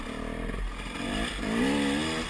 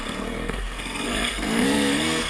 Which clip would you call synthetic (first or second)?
second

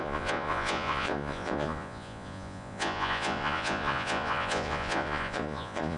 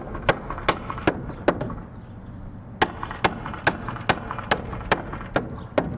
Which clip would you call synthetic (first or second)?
first